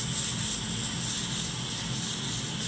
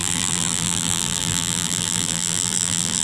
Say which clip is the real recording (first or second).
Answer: first